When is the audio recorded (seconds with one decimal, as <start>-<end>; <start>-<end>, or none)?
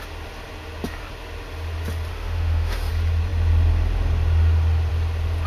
0.0-2.1; 2.9-5.5